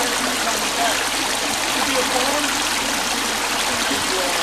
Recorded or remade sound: recorded